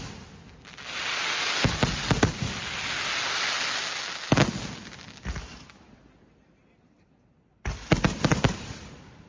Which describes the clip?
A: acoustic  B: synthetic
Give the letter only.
A